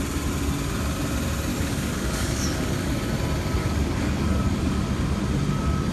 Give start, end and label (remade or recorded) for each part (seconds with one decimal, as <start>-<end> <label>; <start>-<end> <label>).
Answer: 0.0-1.5 recorded; 1.5-2.9 remade; 2.9-3.6 recorded; 3.6-4.8 remade; 4.8-5.9 recorded